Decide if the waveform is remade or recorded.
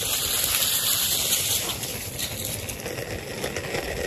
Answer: recorded